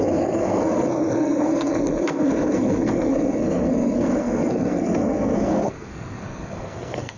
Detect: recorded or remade remade